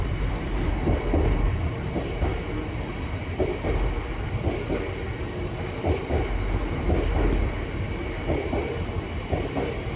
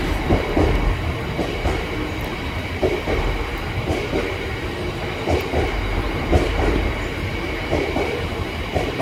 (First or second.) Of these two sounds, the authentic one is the first